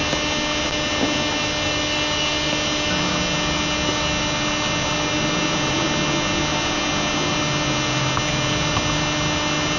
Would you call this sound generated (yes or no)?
no